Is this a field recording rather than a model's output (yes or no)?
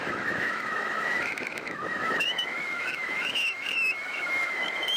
no